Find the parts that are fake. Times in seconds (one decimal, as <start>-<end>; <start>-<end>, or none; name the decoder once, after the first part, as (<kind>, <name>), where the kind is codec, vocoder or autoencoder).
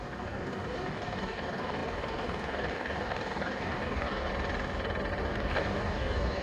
0.0-4.3 (codec, DAC); 5.2-6.4